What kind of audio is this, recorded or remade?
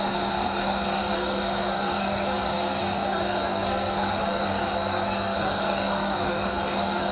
remade